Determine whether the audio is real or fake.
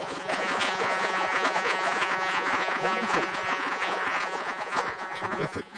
fake